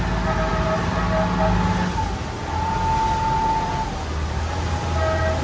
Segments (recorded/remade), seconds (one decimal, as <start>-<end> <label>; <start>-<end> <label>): 0.0-5.4 recorded